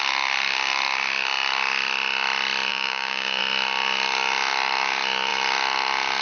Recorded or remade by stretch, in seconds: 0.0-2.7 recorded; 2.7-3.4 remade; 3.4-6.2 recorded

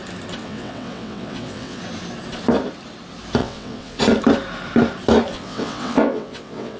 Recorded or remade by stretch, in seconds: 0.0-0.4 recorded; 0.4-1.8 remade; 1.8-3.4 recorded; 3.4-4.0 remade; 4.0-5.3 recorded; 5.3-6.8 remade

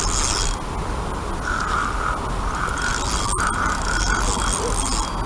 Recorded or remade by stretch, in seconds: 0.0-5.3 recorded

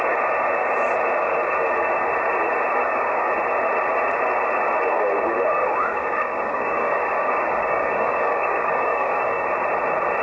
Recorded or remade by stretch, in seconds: 0.0-2.8 recorded; 2.8-3.3 remade; 3.3-5.6 recorded; 5.6-9.5 remade; 9.5-10.2 recorded